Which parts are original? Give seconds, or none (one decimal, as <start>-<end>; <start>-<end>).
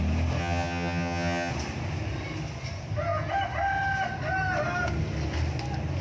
0.0-0.4; 1.5-6.0